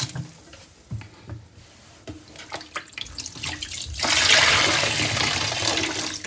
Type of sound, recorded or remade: recorded